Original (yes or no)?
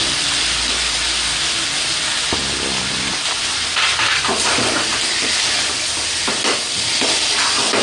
yes